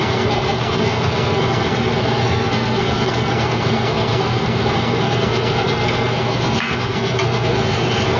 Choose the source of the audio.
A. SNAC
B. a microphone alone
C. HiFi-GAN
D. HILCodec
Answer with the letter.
A